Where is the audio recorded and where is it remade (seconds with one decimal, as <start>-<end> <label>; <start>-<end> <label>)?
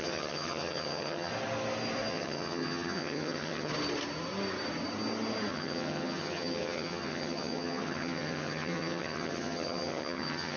0.0-1.3 remade; 1.3-2.1 recorded; 2.1-3.7 remade; 3.7-5.5 recorded; 5.5-10.6 remade